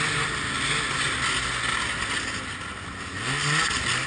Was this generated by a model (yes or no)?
no